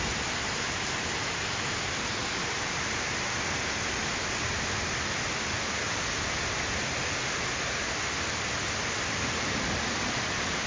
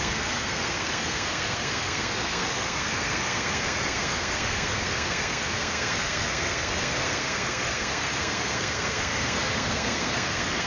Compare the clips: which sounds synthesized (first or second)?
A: second